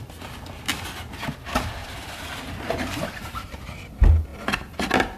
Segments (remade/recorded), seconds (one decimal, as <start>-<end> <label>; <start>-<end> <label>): 0.0-1.8 recorded; 1.8-3.4 remade; 3.4-5.2 recorded